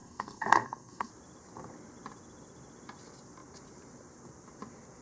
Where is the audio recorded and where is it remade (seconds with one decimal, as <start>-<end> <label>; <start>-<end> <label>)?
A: 0.0-1.1 remade; 1.1-5.0 recorded